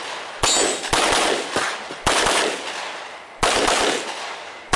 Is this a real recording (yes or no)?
yes